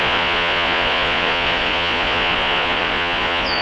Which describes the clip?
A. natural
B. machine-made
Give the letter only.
B